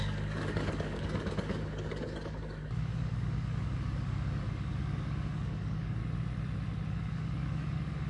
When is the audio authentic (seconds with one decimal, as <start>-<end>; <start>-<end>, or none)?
6.0-6.9